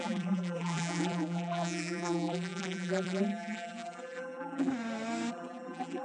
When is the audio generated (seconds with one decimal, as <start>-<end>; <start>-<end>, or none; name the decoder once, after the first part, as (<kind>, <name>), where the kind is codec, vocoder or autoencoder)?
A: 0.0-4.7 (vocoder, BigVGAN v2); 5.3-6.0